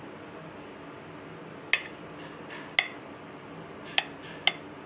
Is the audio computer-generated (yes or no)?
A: no